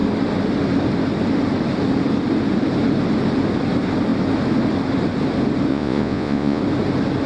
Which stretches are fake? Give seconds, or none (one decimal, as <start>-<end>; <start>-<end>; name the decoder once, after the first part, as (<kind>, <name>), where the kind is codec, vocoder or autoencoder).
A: 5.7-6.6 (vocoder, Vocos)